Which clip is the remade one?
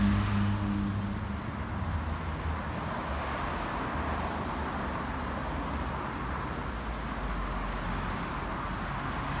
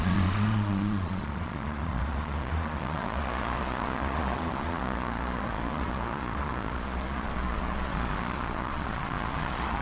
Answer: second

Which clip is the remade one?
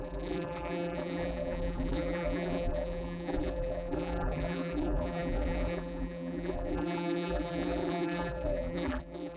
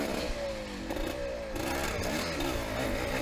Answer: first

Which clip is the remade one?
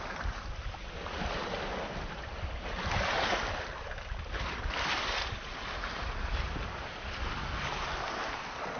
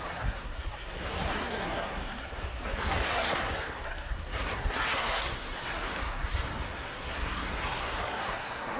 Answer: second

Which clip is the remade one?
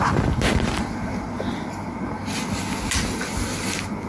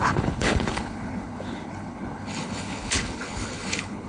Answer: second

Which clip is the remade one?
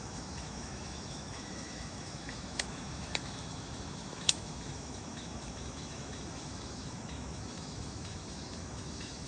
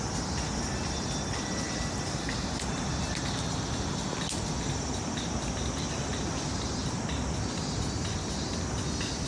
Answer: first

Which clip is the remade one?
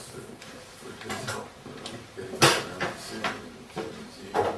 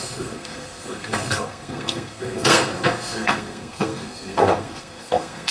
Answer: second